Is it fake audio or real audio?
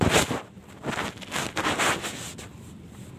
real